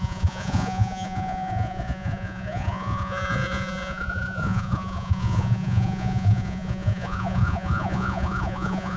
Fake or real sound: fake